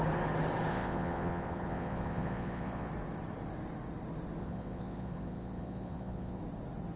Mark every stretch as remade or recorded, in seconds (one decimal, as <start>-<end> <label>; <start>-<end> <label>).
0.0-0.7 recorded; 0.7-2.9 remade; 2.9-4.4 recorded; 4.4-6.4 remade; 6.4-7.0 recorded